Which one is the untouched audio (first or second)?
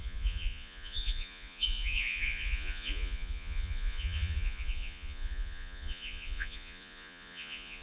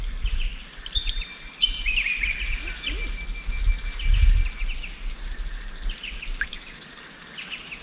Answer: second